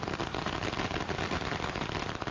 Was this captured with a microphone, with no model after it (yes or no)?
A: yes